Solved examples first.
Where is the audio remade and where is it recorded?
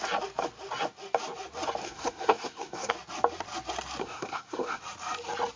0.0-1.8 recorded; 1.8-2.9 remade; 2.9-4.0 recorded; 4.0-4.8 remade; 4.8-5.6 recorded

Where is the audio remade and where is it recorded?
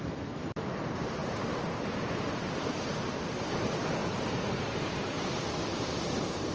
0.0-1.2 remade; 1.2-2.7 recorded; 2.7-4.0 remade; 4.0-4.9 recorded; 4.9-6.5 remade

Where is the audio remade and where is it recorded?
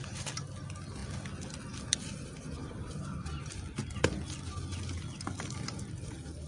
0.0-6.5 recorded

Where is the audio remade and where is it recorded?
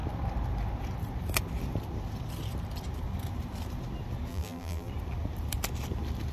0.0-4.3 recorded; 4.3-4.9 remade; 4.9-6.3 recorded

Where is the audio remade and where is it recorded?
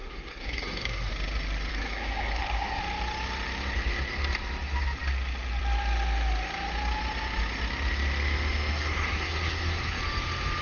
0.0-1.1 remade; 1.1-1.7 recorded; 1.7-2.8 remade; 2.8-8.7 recorded; 8.7-10.0 remade; 10.0-10.6 recorded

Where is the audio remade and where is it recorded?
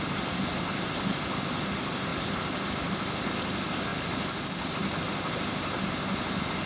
0.0-6.7 recorded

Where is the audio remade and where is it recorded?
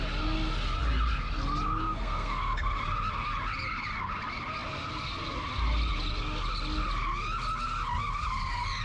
0.0-1.8 recorded; 1.8-2.8 remade; 2.8-8.8 recorded